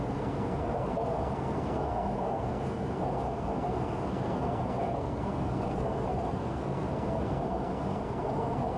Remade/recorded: remade